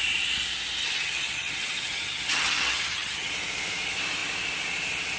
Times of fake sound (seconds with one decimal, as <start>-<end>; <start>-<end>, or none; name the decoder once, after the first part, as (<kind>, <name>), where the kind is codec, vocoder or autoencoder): 0.8-3.3 (vocoder, HiFi-GAN)